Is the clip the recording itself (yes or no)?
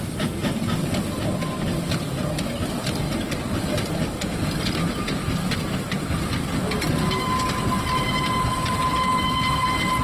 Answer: yes